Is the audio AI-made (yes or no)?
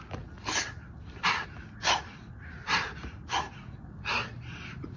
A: no